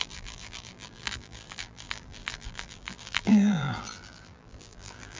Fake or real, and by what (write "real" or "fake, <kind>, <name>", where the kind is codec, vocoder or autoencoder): fake, vocoder, BigVGAN v2